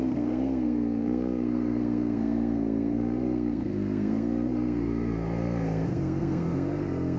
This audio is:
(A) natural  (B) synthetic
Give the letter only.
B